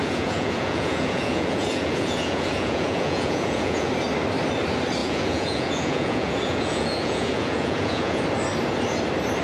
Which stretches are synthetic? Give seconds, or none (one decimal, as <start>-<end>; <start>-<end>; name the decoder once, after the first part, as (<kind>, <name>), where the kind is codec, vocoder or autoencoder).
0.0-3.9 (vocoder, Vocos); 5.0-8.2